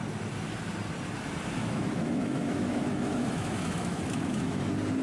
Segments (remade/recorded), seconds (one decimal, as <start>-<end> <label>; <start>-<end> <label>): 0.0-1.6 recorded; 1.6-4.6 remade; 4.6-5.0 recorded